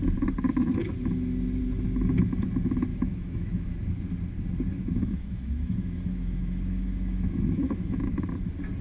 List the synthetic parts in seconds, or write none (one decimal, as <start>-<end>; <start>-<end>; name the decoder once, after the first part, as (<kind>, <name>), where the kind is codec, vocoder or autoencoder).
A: 2.9-3.9 (autoencoder, DAC-VAE); 4.7-8.2